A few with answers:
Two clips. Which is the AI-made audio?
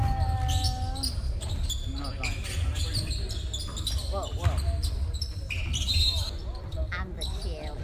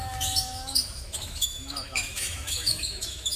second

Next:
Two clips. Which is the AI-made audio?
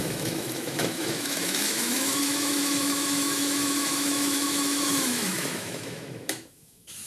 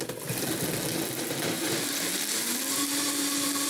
first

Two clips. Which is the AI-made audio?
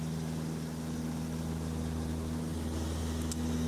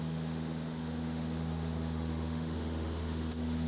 second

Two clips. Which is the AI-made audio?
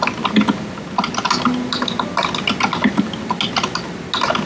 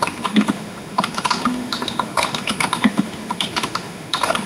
second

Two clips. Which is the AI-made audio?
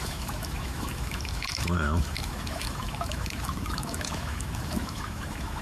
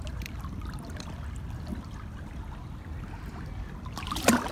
first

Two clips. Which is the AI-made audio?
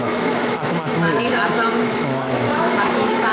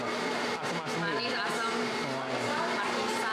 first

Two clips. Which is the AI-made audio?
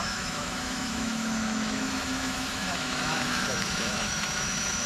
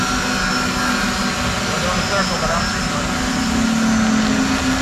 first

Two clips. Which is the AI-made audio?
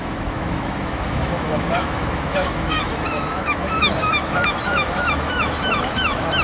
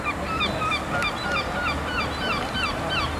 first